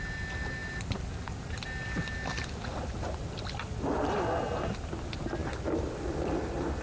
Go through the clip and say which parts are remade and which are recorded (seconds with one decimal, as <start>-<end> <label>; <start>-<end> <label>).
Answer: 0.0-6.8 recorded